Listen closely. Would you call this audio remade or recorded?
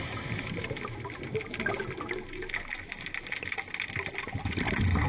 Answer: recorded